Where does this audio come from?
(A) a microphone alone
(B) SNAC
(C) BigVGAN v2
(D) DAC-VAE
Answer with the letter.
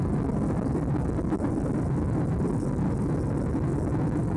A